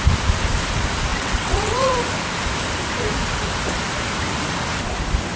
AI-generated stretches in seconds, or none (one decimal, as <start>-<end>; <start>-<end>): 1.1-1.9